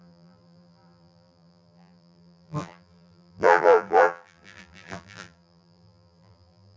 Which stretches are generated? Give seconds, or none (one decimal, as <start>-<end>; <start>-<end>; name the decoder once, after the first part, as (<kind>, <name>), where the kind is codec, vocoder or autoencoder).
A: 0.0-6.8 (vocoder, BigVGAN v2)